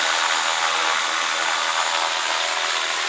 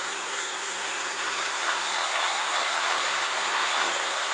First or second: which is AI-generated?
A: second